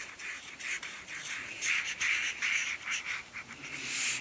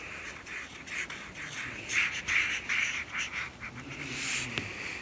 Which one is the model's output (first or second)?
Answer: first